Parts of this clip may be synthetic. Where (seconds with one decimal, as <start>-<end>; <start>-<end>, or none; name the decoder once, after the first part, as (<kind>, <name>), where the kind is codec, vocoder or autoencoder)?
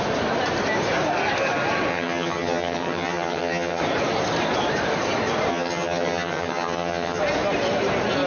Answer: 1.9-3.8 (vocoder, HiFi-GAN); 5.5-7.2